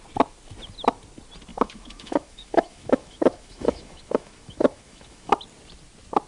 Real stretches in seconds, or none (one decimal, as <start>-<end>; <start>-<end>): 0.0-1.5; 5.3-6.3